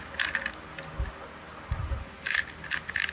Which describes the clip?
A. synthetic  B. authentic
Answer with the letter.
B